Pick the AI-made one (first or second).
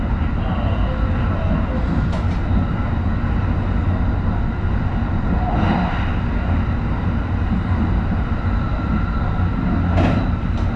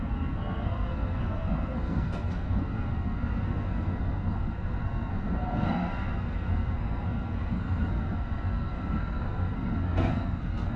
second